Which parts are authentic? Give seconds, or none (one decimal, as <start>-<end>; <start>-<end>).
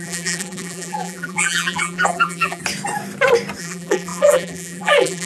2.6-3.6